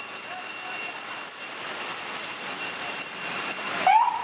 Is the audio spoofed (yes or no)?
no